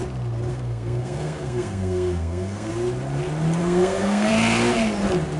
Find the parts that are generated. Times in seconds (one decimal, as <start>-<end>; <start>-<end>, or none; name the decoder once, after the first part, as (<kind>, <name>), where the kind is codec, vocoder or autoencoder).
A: 0.5-2.7 (codec, SNAC); 3.6-4.3